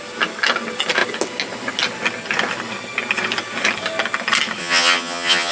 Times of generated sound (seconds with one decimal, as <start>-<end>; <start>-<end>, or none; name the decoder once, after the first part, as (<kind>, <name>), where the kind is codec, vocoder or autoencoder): 4.6-5.5 (vocoder, HiFi-GAN)